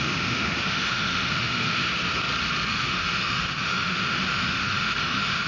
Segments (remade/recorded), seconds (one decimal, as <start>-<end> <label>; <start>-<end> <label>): 0.0-1.8 remade; 1.8-2.7 recorded; 2.7-5.5 remade